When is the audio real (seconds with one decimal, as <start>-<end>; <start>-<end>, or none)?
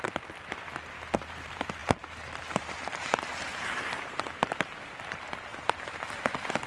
5.5-6.7